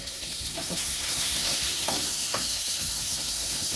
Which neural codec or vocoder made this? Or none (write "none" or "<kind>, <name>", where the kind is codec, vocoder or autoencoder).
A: codec, SNAC